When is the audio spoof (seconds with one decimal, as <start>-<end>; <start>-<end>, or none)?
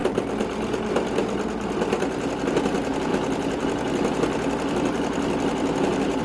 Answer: 0.0-1.5; 3.1-6.2